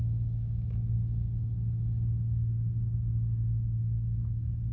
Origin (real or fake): fake